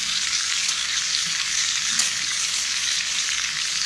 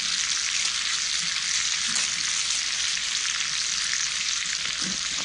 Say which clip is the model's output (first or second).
first